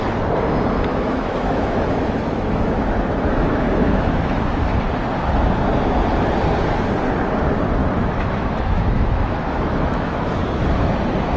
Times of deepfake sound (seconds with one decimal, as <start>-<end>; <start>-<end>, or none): 0.9-4.4; 7.8-10.7